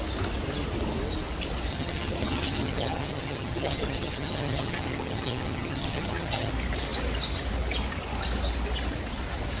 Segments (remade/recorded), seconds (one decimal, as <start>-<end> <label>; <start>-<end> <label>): 0.0-1.7 recorded; 1.7-6.5 remade; 6.5-9.6 recorded